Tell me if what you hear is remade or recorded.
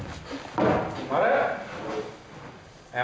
recorded